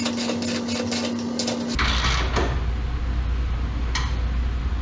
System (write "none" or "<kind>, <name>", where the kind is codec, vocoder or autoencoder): none